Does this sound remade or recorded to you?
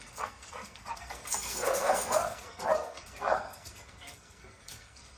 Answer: remade